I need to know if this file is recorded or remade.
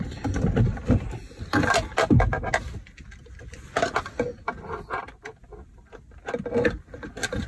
recorded